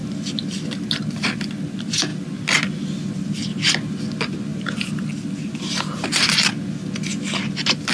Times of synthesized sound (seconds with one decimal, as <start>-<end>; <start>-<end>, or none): none